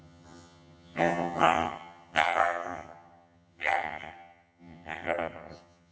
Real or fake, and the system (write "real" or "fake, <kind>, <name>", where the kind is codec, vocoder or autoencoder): fake, vocoder, HiFi-GAN